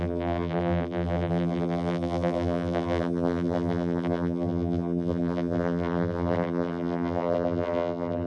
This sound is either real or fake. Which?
fake